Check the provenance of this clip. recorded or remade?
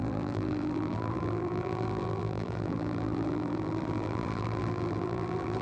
remade